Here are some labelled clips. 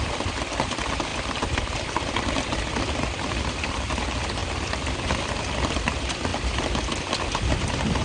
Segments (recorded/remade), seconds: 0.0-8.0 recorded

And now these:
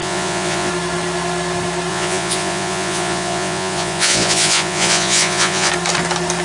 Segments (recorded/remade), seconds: 0.0-0.7 remade; 0.7-1.9 recorded; 1.9-5.7 remade; 5.7-6.4 recorded